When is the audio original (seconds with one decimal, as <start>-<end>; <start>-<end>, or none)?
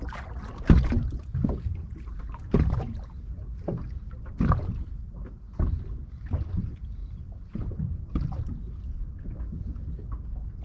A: 0.0-7.0; 8.4-10.6